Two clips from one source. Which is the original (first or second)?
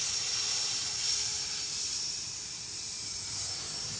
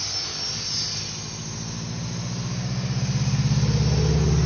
second